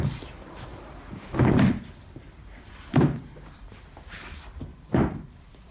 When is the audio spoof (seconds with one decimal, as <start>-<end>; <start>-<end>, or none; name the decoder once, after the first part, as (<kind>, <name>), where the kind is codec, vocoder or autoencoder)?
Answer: 0.0-5.7 (vocoder, BigVGAN v2)